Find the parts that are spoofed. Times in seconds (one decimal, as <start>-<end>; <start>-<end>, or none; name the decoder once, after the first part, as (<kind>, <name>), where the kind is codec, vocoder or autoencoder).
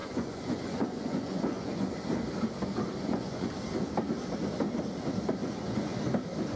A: 0.0-1.9 (vocoder, Vocos); 3.0-3.5; 5.4-6.0